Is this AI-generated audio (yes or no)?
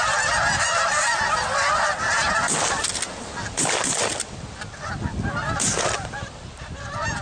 no